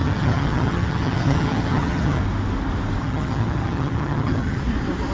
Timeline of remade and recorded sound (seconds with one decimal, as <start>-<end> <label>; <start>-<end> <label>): 0.0-2.2 remade; 2.2-3.0 recorded; 3.0-4.6 remade; 4.6-5.1 recorded